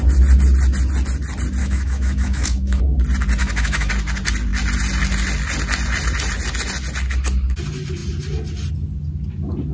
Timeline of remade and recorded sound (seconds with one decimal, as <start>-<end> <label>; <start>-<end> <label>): 0.0-1.6 recorded; 1.6-2.8 remade; 2.8-3.4 recorded; 3.4-3.9 remade; 3.9-9.7 recorded